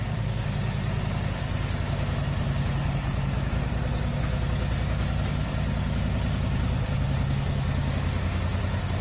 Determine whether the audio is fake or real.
real